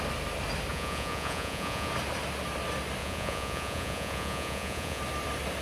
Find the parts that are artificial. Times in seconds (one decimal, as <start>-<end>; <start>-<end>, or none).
0.7-1.9; 3.0-5.0